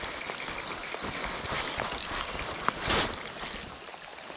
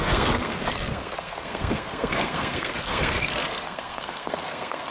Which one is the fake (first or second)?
second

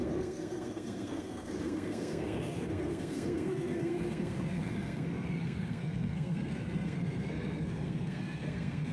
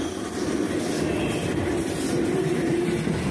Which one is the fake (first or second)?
first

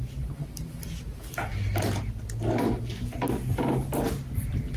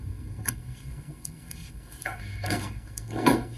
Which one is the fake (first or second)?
second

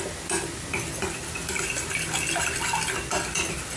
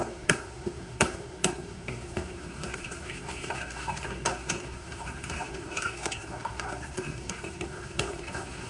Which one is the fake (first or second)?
second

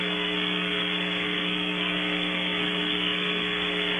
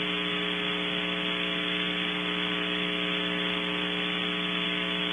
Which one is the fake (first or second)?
first